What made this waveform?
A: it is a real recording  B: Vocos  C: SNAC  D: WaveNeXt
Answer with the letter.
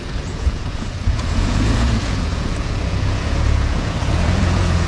B